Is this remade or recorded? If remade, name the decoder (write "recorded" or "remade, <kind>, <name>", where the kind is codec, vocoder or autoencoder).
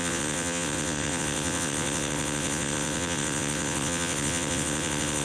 remade, vocoder, WaveNeXt